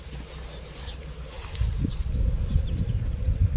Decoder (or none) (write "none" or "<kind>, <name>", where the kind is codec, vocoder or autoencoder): vocoder, BigVGAN v2